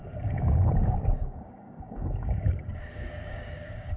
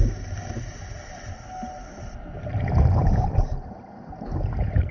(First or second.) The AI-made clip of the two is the first